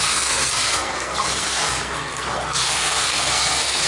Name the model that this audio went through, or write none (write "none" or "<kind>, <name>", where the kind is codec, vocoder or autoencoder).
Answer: codec, SNAC